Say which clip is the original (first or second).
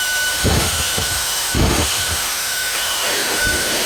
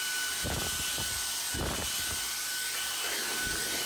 second